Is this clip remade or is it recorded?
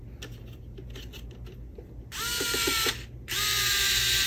recorded